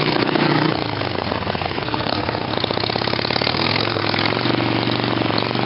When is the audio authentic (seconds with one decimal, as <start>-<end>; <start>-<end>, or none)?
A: 2.5-3.5; 4.0-5.7